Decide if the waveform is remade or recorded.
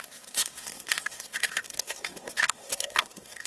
remade